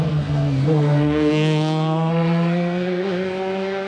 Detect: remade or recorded remade